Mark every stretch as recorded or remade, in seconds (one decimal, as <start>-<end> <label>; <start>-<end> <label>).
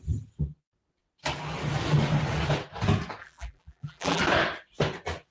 0.0-3.2 recorded; 3.2-4.2 remade; 4.2-5.3 recorded